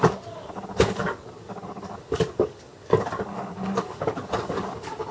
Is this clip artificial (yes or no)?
yes